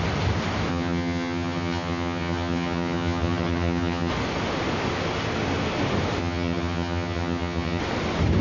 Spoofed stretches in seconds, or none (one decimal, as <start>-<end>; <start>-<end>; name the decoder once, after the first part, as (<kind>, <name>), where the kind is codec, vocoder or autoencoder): 0.7-4.1 (vocoder, HiFi-GAN); 6.2-7.8